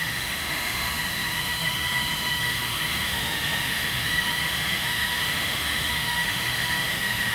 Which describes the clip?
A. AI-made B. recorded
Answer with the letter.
A